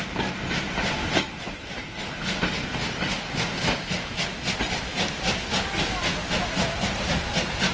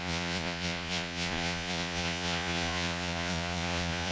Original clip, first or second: first